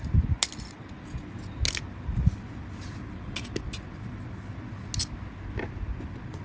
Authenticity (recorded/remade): recorded